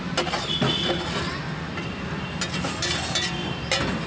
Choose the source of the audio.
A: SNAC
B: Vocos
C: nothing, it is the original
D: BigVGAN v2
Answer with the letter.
C